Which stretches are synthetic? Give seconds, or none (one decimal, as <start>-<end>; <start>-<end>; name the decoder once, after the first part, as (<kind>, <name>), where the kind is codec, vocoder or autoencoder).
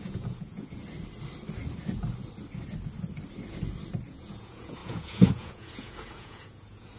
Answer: 0.0-0.8 (vocoder, Vocos); 4.1-7.0